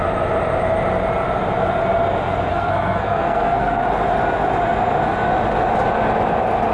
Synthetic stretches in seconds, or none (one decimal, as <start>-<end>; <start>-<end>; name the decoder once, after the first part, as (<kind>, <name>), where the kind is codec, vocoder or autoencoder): 2.5-3.8 (codec, SNAC)